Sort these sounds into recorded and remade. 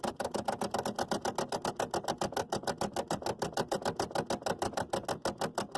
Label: recorded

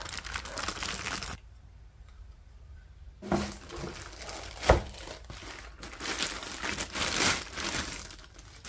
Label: recorded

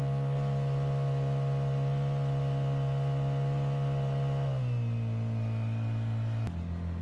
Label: recorded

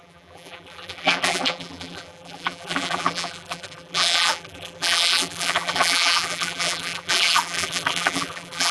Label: remade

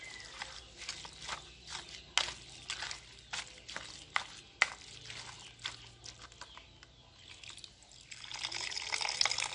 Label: recorded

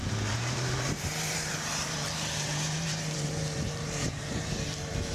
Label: remade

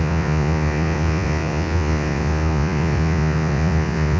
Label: remade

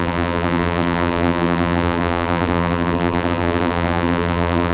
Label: remade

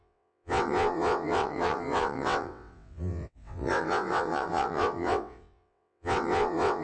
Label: remade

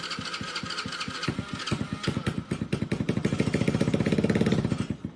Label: recorded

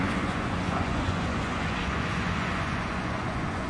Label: remade